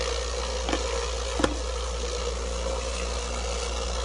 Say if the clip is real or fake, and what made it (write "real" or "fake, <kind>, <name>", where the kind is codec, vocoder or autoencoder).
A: real